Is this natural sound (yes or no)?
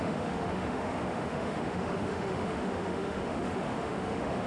no